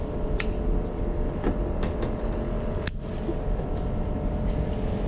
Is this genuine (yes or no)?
yes